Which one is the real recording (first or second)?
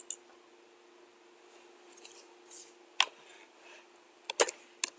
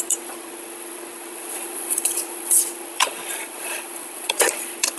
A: first